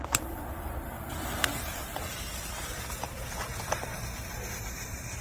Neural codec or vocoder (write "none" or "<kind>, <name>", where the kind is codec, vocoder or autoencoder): vocoder, BigVGAN v2